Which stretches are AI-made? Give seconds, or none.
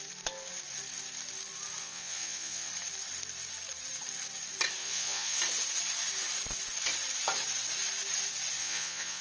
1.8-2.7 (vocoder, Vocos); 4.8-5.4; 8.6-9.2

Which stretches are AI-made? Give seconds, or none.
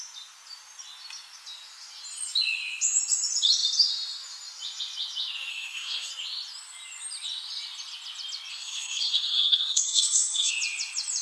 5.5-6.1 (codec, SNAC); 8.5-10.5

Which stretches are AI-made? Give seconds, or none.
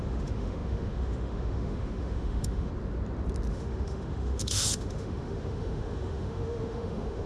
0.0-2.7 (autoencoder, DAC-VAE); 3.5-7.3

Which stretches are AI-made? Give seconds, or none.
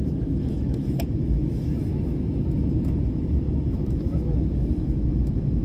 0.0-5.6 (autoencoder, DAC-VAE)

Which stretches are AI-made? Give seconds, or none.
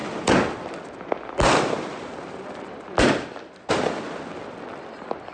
none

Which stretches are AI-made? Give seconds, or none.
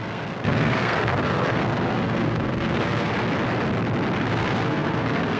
0.0-3.1 (codec, SNAC); 4.2-5.4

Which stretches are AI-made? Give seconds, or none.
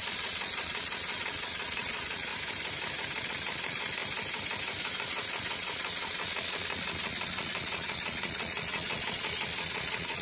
0.0-2.3 (vocoder, Vocos); 3.2-4.0; 4.9-10.2